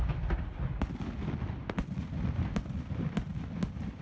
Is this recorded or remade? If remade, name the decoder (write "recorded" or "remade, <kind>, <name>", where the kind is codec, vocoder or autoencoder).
recorded